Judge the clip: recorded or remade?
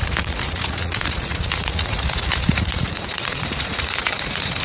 remade